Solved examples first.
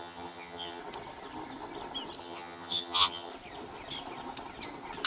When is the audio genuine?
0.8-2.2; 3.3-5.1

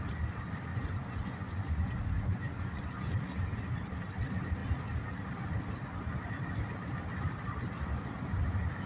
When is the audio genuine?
0.0-0.7; 2.8-8.9

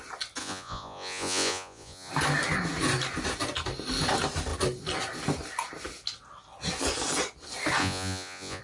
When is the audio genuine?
0.0-0.4; 2.1-7.8

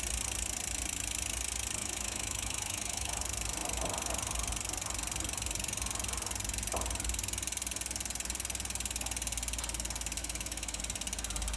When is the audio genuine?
0.0-1.8; 3.2-10.2; 10.8-11.6

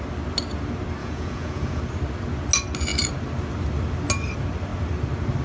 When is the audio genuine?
0.0-1.0; 1.8-5.4